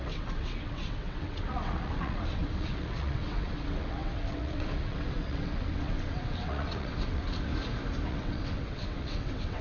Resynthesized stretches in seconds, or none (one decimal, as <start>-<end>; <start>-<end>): 0.0-7.5; 8.1-9.6